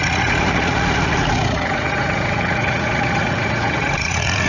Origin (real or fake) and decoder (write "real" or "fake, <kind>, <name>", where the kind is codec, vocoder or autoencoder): fake, vocoder, Vocos